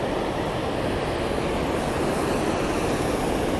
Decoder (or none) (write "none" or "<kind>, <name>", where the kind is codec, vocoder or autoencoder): none